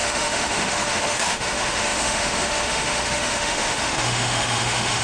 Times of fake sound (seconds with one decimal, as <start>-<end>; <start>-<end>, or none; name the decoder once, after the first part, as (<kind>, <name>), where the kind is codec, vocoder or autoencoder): 0.0-5.0 (autoencoder, DAC-VAE)